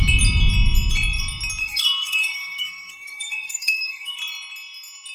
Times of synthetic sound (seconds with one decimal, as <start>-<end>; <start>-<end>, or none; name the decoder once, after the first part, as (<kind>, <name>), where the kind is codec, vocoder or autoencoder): 1.6-4.2 (codec, SNAC)